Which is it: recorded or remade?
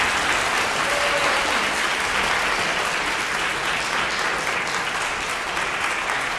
recorded